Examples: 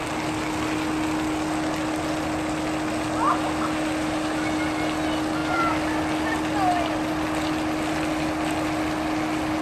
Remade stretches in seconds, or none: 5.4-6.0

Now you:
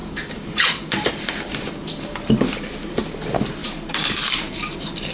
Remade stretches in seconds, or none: 0.0-2.6; 3.6-5.1